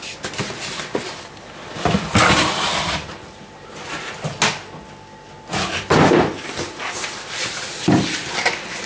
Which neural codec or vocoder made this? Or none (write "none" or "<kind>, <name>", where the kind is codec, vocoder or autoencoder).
none